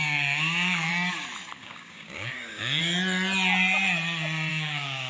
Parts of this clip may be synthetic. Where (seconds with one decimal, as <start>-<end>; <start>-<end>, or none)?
0.0-0.9; 1.6-2.8; 4.5-5.1